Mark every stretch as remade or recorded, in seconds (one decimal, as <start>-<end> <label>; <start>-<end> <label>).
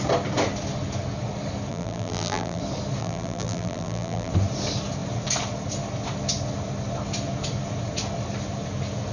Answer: 0.0-1.7 recorded; 1.7-2.6 remade; 2.6-3.0 recorded; 3.0-4.3 remade; 4.3-9.1 recorded